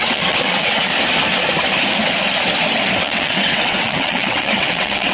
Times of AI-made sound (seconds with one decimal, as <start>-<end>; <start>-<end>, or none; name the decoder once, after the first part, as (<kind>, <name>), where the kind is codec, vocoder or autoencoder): 0.0-0.9 (vocoder, WaveNeXt); 3.0-5.1